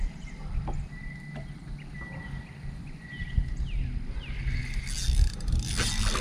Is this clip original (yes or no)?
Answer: yes